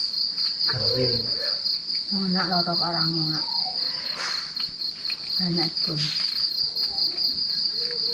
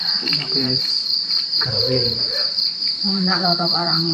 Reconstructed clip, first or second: second